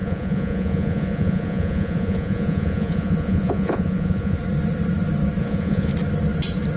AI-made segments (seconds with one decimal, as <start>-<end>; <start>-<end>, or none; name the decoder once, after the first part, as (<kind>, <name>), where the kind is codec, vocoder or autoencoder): 0.0-4.4 (vocoder, Vocos); 5.4-5.9